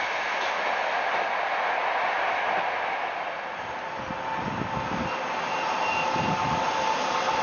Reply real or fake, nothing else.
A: real